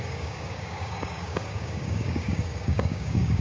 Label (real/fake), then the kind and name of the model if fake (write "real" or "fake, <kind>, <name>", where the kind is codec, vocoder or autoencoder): fake, codec, DAC